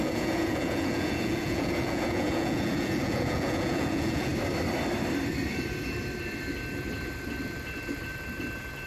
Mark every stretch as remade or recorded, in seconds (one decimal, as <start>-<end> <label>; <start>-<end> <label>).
0.0-4.3 remade; 4.3-8.9 recorded